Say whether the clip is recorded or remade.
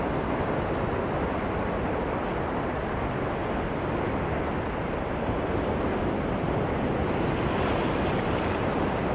recorded